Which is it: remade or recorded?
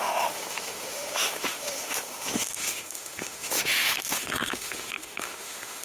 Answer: remade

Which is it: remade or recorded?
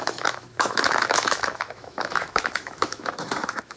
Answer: remade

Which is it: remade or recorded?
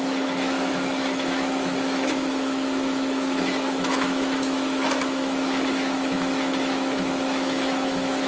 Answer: remade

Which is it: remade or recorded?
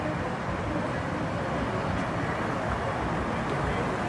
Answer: recorded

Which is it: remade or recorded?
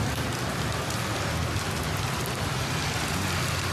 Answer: recorded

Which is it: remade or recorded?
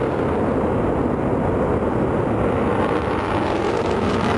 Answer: recorded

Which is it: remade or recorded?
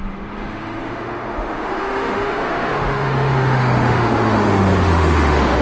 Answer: remade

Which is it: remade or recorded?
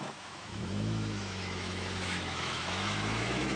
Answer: remade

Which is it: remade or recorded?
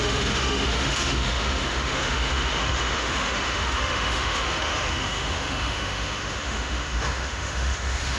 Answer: remade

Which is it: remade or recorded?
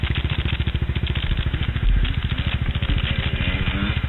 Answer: recorded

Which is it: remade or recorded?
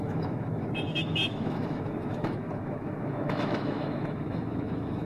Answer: remade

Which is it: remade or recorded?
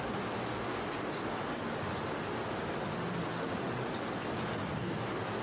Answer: recorded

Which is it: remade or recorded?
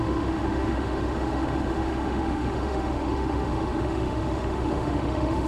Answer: remade